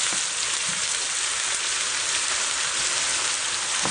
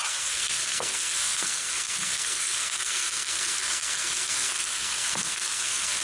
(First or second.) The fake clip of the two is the second